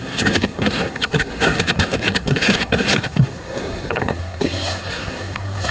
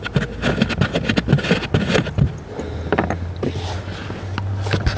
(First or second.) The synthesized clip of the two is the first